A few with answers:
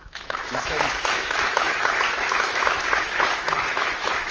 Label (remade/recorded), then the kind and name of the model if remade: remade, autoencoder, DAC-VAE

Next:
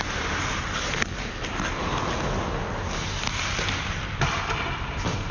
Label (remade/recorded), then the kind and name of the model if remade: recorded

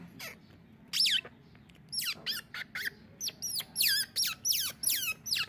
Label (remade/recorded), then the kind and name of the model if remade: recorded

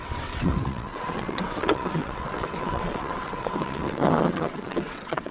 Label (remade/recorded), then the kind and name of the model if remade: remade, vocoder, WaveNeXt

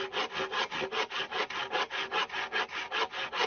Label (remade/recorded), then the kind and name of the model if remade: recorded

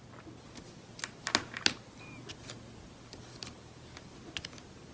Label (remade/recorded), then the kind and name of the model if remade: recorded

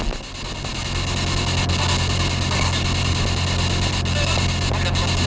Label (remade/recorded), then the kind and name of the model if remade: recorded